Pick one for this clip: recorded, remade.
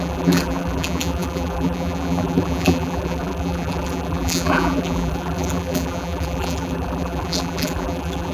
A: remade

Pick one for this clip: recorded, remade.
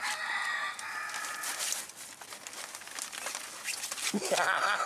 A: recorded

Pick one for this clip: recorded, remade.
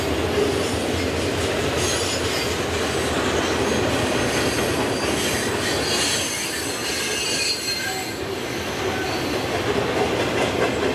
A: recorded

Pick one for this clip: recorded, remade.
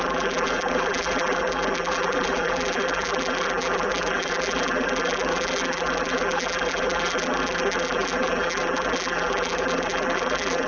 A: remade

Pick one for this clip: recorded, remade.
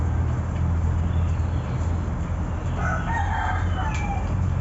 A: recorded